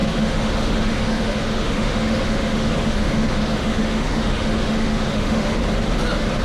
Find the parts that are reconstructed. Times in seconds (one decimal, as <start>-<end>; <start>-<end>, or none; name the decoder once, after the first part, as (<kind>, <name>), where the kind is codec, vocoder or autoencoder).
0.0-5.6 (autoencoder, DAC-VAE)